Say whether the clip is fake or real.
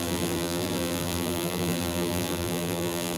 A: fake